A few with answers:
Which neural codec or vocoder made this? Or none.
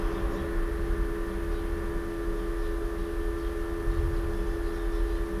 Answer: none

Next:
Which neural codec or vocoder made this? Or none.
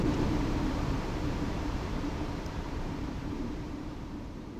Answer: vocoder, BigVGAN v2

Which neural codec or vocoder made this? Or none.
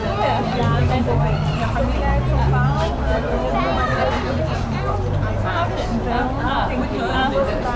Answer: none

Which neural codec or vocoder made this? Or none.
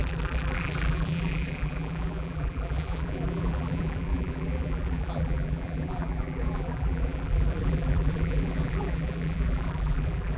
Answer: vocoder, BigVGAN v2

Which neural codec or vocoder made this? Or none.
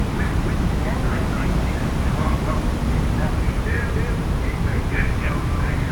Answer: vocoder, BigVGAN v2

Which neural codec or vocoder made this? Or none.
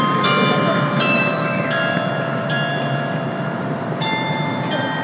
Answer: vocoder, BigVGAN v2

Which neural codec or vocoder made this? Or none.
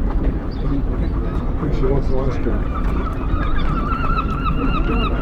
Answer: vocoder, BigVGAN v2